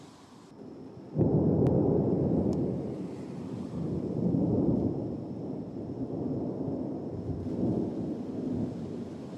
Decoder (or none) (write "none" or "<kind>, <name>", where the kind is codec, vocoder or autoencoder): vocoder, BigVGAN v2